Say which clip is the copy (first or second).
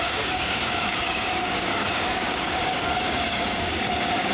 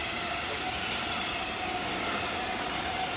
first